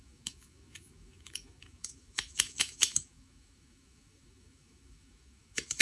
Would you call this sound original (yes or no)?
no